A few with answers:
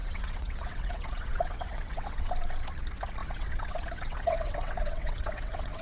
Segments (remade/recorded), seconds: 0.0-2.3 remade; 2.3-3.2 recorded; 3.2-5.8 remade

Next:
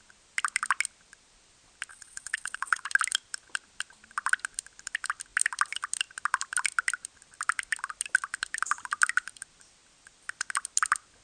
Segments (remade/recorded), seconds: 0.0-1.9 recorded; 1.9-2.8 remade; 2.8-11.2 recorded

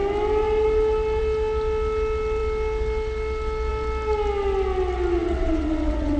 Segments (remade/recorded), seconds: 0.0-5.2 recorded; 5.2-6.2 remade

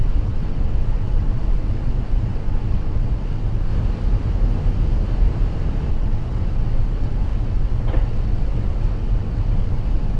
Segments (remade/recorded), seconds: 0.0-3.7 remade; 3.7-5.9 recorded; 5.9-10.2 remade

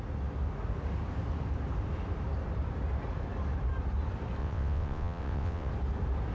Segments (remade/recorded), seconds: 0.0-4.4 recorded; 4.4-5.7 remade; 5.7-6.3 recorded

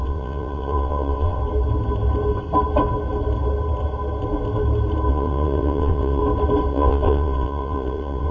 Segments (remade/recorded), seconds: 0.0-1.4 remade; 1.4-5.1 recorded; 5.1-6.2 remade; 6.2-6.7 recorded; 6.7-8.3 remade

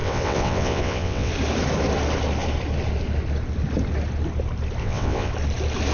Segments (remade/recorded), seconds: 0.0-1.3 remade; 1.3-4.8 recorded; 4.8-5.3 remade; 5.3-5.9 recorded